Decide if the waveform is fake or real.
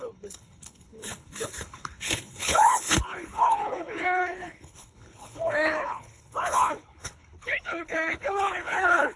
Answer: fake